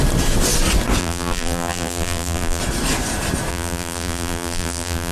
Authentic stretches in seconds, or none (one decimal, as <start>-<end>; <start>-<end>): 0.0-1.0; 2.6-3.5